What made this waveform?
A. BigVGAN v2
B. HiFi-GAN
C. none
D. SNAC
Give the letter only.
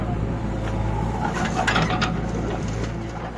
C